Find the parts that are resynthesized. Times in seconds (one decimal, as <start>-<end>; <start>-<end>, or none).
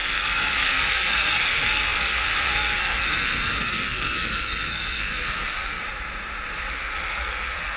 0.0-5.8; 6.7-7.8